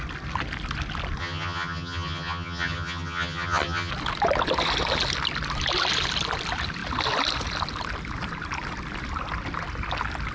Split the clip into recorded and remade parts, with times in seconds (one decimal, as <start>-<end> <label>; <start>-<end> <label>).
0.0-1.2 recorded; 1.2-3.9 remade; 3.9-10.3 recorded